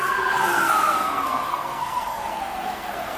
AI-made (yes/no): yes